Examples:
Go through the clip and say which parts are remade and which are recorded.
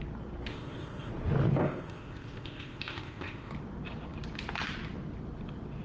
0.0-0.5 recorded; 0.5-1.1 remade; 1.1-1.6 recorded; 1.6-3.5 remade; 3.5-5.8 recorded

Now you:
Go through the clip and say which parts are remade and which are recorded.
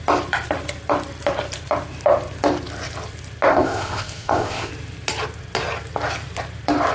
0.0-3.5 recorded; 3.5-4.7 remade; 4.7-6.9 recorded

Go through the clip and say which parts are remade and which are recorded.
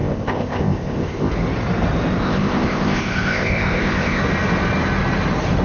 0.0-1.3 remade; 1.3-2.2 recorded; 2.2-4.2 remade; 4.2-5.6 recorded